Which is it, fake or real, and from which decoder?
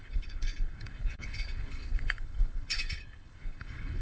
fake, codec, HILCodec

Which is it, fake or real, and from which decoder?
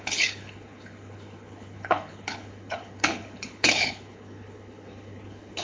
fake, codec, HILCodec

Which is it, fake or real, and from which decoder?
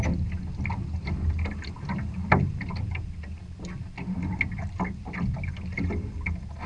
real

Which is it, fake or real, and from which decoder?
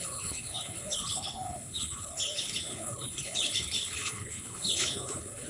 fake, codec, HILCodec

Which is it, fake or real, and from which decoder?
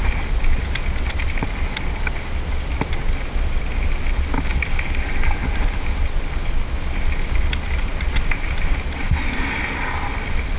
real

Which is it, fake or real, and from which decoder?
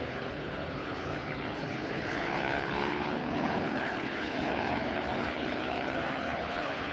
fake, codec, HILCodec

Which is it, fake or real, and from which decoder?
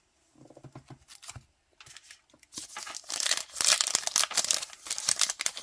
real